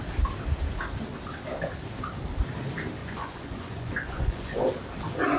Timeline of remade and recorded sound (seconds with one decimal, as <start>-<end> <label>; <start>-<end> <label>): 0.0-3.0 recorded; 3.0-4.6 remade; 4.6-5.4 recorded